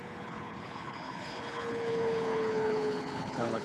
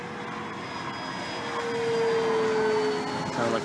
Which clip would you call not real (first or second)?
first